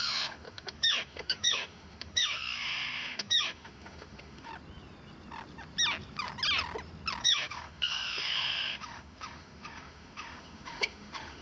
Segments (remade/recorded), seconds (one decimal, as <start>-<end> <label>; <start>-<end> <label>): 0.0-4.5 remade; 4.5-7.2 recorded; 7.2-11.4 remade